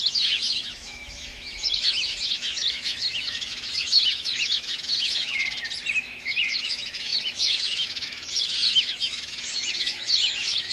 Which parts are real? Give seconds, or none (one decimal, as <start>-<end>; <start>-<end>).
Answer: 5.4-6.0